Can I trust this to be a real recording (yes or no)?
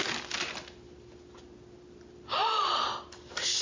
yes